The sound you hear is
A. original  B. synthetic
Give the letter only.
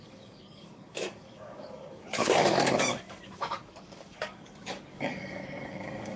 B